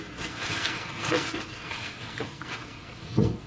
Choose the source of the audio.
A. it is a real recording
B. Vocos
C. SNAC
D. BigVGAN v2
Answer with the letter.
C